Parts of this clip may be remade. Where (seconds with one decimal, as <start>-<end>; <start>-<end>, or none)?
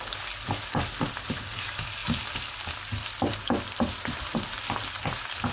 none